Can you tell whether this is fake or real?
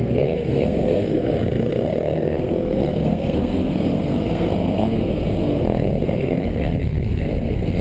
fake